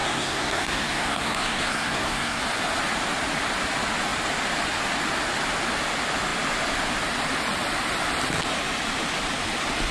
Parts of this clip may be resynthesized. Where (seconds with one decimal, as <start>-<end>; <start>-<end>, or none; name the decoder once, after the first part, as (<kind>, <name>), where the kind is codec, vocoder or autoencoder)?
0.0-2.4 (codec, SNAC)